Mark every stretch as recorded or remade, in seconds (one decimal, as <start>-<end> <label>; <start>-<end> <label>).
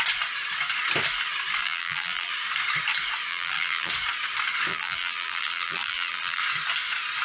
0.0-1.6 recorded; 1.6-2.3 remade; 2.3-3.3 recorded; 3.3-3.9 remade; 3.9-4.7 recorded; 4.7-6.4 remade; 6.4-7.2 recorded